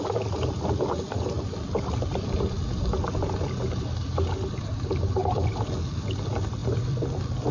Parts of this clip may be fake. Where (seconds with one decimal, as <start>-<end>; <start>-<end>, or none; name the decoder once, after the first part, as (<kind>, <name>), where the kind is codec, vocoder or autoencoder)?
6.6-7.5 (vocoder, BigVGAN v2)